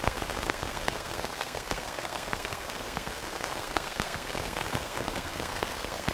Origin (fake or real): fake